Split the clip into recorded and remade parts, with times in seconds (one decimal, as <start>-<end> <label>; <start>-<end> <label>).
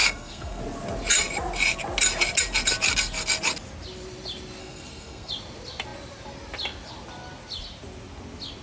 0.0-0.6 remade; 0.6-4.6 recorded; 4.6-5.3 remade; 5.3-8.6 recorded